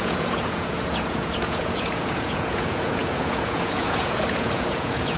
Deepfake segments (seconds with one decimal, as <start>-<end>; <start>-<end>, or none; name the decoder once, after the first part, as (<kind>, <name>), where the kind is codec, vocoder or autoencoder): 0.0-5.2 (vocoder, Vocos)